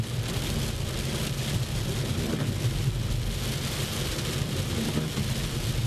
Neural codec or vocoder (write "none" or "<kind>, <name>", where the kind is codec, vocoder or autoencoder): none